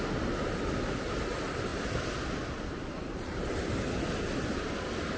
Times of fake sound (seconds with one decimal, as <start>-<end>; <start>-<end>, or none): none